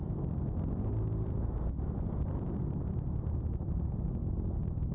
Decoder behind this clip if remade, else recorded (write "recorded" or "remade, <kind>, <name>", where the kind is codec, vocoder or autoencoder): remade, vocoder, BigVGAN v2